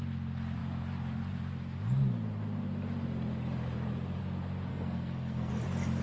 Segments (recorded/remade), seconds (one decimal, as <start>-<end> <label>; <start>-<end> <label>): 0.0-4.7 recorded; 4.7-5.5 remade; 5.5-6.0 recorded